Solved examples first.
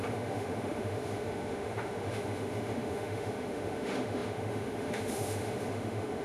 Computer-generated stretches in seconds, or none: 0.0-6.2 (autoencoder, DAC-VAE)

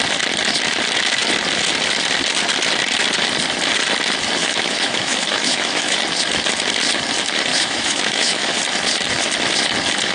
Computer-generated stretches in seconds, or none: 4.4-6.0 (autoencoder, DAC-VAE); 7.5-8.6

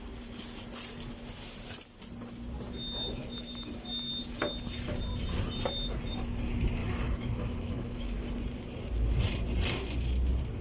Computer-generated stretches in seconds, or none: 3.2-4.1 (autoencoder, DAC-VAE); 6.8-8.3

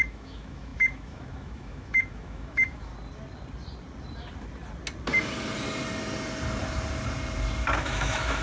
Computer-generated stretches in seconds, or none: 0.0-2.9 (autoencoder, DAC-VAE); 7.8-8.4

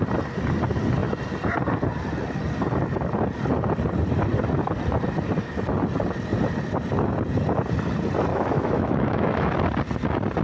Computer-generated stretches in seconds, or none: 8.3-9.5 (autoencoder, DAC-VAE)

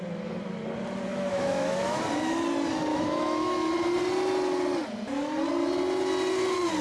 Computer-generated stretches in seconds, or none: 1.1-2.0 (autoencoder, DAC-VAE); 2.9-3.7

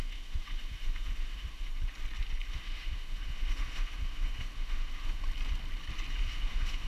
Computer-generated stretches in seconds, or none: 0.0-1.7 (autoencoder, DAC-VAE); 2.5-5.2; 6.2-6.9